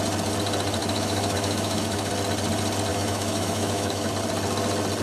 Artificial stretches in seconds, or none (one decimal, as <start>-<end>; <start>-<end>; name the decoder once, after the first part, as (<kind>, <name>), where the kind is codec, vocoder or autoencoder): 0.8-2.1 (autoencoder, DAC-VAE); 2.9-4.1

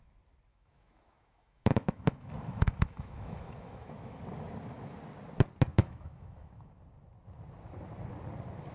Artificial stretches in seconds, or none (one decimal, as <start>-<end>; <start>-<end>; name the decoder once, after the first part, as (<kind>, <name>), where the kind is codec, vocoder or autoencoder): 0.5-4.2 (autoencoder, DAC-VAE); 5.7-6.8

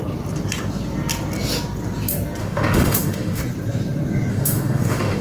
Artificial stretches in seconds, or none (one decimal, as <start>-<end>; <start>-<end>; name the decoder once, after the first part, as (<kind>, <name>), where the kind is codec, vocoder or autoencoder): 2.4-3.4 (autoencoder, DAC-VAE); 4.3-5.2

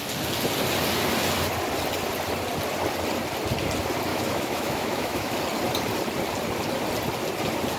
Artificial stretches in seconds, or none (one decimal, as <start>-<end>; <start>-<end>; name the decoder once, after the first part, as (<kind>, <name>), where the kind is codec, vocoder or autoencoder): 4.1-5.4 (autoencoder, DAC-VAE)

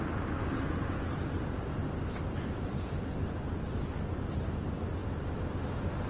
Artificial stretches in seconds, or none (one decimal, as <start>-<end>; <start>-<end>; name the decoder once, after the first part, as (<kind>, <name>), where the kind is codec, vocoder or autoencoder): none

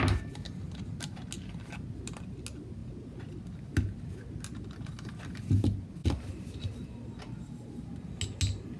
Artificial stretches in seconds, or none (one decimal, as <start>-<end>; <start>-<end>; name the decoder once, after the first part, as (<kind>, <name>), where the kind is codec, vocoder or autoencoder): none

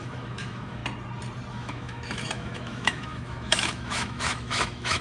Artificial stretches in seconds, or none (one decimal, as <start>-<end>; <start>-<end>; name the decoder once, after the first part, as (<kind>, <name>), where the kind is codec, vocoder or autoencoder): 0.0-0.8 (autoencoder, DAC-VAE); 1.5-5.0

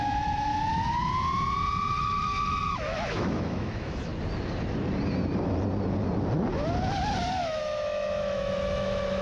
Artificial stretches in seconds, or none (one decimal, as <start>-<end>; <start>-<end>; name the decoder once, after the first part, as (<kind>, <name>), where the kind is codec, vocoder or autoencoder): 0.0-0.5 (autoencoder, DAC-VAE); 1.9-4.1; 7.4-9.2